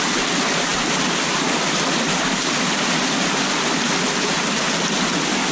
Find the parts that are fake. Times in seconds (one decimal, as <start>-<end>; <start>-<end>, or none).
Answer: none